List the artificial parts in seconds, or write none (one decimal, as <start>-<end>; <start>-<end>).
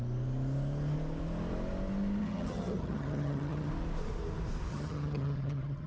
2.2-3.7; 4.7-5.9